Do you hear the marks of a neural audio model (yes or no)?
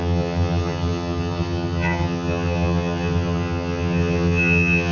yes